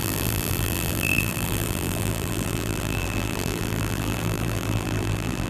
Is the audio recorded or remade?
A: remade